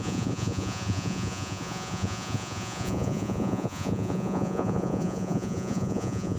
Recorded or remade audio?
remade